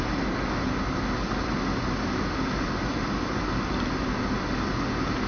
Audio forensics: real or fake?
real